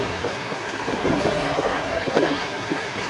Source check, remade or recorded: remade